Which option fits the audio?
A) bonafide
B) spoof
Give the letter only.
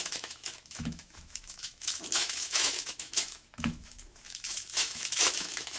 B